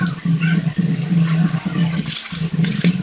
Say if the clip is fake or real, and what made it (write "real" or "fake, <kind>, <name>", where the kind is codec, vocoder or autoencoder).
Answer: fake, vocoder, BigVGAN v2